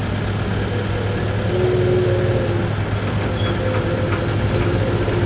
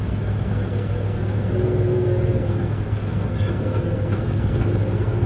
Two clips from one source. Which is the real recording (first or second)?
first